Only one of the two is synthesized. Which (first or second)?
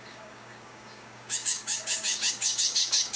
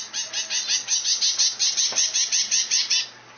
first